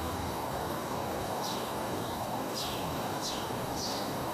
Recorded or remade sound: remade